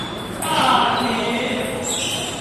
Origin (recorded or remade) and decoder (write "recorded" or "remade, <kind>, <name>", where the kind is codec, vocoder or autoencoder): remade, vocoder, BigVGAN v2